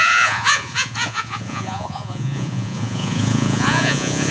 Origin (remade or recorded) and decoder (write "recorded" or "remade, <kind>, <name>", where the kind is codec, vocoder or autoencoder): remade, vocoder, Vocos